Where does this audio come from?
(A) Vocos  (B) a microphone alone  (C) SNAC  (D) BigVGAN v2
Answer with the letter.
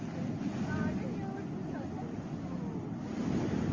B